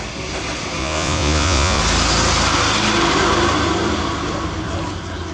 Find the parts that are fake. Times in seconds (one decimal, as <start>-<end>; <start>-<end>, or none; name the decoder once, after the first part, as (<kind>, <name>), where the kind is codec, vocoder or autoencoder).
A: 0.8-1.8 (vocoder, Vocos)